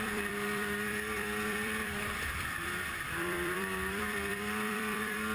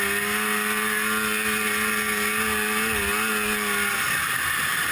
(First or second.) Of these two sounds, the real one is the second